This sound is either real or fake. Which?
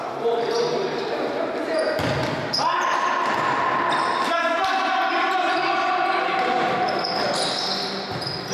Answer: real